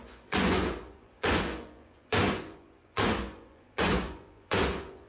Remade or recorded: remade